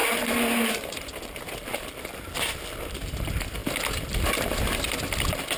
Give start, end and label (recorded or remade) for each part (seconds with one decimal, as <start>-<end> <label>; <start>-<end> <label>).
0.0-1.2 remade; 1.2-5.6 recorded